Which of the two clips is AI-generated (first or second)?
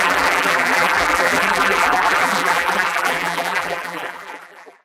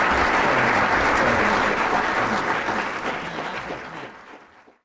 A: first